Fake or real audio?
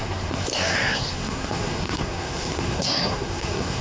fake